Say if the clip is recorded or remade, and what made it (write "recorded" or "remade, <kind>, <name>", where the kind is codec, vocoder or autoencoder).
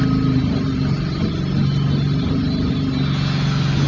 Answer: recorded